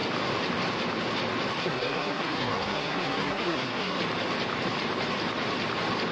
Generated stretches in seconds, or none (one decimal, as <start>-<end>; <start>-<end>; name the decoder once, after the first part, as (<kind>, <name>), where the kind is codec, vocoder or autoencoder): 1.6-4.0 (codec, SNAC)